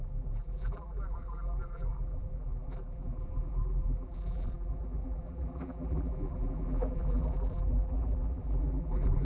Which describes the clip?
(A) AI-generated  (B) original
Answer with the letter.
A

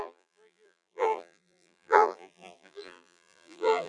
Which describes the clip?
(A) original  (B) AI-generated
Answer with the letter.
B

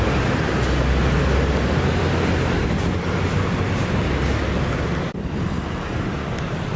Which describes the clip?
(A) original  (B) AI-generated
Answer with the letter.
A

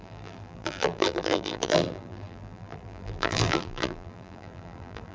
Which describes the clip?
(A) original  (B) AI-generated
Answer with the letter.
B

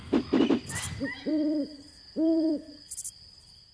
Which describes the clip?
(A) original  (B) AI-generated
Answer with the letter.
B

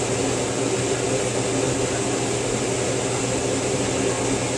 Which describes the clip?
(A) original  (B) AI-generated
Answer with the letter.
A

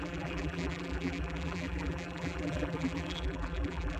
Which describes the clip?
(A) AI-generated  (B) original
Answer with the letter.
A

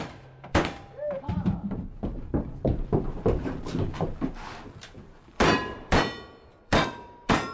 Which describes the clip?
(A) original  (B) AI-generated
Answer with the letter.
B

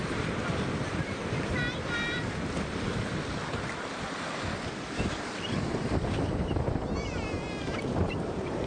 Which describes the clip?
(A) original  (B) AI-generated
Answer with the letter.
B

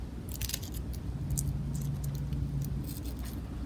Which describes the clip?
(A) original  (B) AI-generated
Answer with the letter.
A